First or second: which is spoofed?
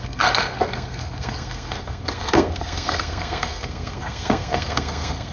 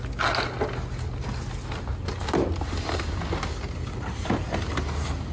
first